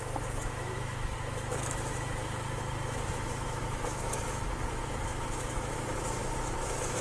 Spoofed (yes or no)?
yes